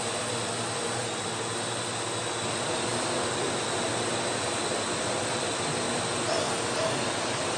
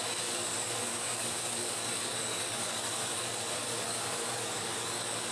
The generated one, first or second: second